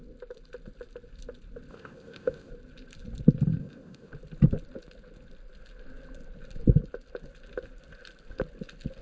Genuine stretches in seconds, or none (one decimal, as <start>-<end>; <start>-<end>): 0.0-1.7; 2.5-3.6; 4.1-9.0